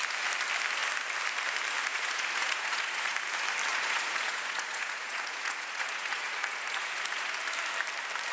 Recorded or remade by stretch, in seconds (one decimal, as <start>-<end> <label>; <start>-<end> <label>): 0.0-1.9 recorded; 1.9-3.2 remade; 3.2-3.7 recorded; 3.7-7.3 remade; 7.3-8.3 recorded